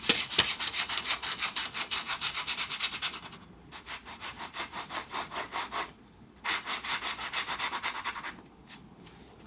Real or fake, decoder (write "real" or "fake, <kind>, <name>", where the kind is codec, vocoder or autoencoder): fake, vocoder, BigVGAN v2